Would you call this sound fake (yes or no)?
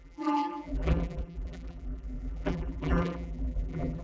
yes